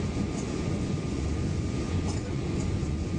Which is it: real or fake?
fake